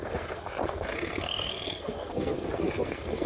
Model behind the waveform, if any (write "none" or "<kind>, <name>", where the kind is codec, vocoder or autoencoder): codec, SNAC